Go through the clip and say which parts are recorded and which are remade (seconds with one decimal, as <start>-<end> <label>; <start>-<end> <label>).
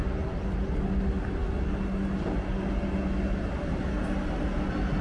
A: 0.0-5.0 recorded